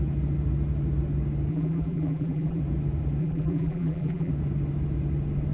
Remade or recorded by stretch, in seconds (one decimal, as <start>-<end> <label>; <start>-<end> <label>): 0.0-1.5 recorded; 1.5-2.6 remade; 2.6-3.2 recorded; 3.2-4.3 remade; 4.3-5.5 recorded